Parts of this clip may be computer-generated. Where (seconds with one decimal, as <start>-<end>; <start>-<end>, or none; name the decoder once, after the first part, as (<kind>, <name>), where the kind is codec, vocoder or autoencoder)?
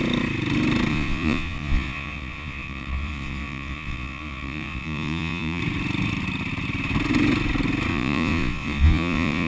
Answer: 0.9-5.6 (vocoder, Vocos); 7.9-9.5